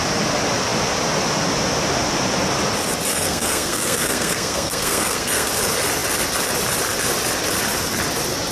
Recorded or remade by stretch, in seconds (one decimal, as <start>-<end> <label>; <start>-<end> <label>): 0.0-3.1 recorded; 3.1-5.5 remade; 5.5-8.5 recorded